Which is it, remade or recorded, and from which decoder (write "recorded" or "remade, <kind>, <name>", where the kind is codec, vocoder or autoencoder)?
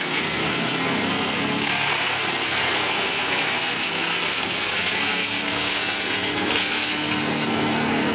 remade, codec, SNAC